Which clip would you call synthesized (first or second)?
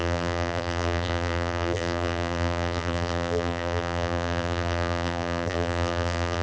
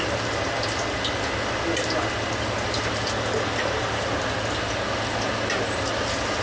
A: first